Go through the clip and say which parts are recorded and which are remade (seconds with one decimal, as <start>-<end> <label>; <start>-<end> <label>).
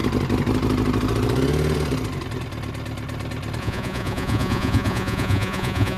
0.0-3.6 recorded; 3.6-6.0 remade